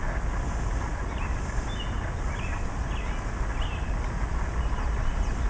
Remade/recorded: recorded